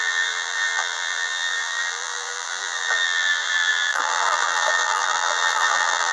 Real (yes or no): no